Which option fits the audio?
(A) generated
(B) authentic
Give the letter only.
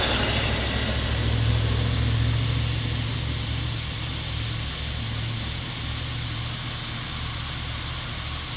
B